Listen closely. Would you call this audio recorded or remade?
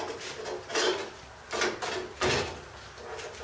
recorded